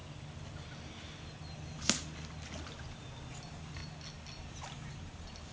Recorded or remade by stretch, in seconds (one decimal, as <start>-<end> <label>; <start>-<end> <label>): 0.0-3.3 recorded; 3.3-3.8 remade; 3.8-4.5 recorded; 4.5-5.5 remade